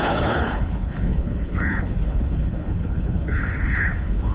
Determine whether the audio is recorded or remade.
remade